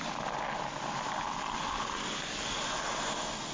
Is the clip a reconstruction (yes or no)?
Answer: no